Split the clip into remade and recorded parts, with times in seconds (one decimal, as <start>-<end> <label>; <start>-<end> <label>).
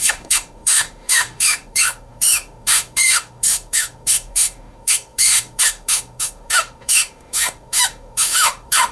0.0-8.9 remade